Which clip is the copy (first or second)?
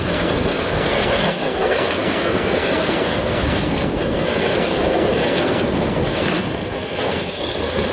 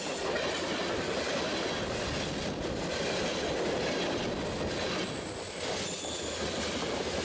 first